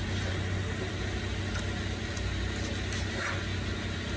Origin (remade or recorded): recorded